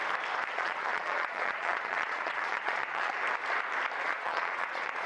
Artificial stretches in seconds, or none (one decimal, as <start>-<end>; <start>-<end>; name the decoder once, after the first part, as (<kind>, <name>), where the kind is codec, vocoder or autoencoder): 0.5-3.1 (vocoder, Vocos); 4.0-5.1